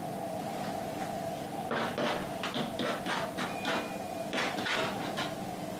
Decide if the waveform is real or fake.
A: real